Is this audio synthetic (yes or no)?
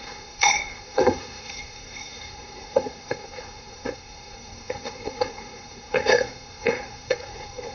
yes